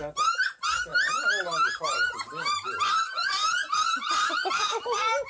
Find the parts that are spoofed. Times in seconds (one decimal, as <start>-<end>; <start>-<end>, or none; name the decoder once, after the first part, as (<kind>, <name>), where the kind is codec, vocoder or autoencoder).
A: none